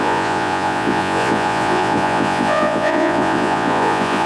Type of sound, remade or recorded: remade